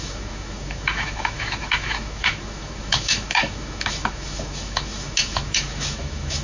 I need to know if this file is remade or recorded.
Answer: remade